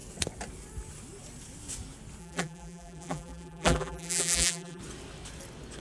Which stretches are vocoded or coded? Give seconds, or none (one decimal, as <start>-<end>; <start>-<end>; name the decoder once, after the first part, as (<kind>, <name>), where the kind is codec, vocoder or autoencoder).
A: 2.2-4.8 (vocoder, BigVGAN v2)